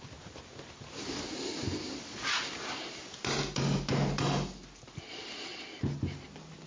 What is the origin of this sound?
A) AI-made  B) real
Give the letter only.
B